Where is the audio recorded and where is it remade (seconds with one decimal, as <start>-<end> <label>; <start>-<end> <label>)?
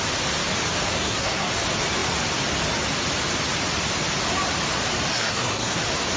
0.0-0.9 recorded; 0.9-1.5 remade; 1.5-5.1 recorded; 5.1-5.8 remade; 5.8-6.2 recorded